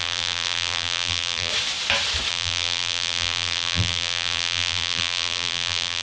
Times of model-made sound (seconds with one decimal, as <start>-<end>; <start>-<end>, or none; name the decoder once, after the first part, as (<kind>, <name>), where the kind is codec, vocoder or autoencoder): 0.0-1.5 (vocoder, BigVGAN v2); 2.3-6.0